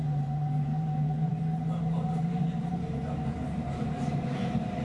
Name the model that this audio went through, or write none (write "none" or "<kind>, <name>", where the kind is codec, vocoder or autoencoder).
vocoder, BigVGAN v2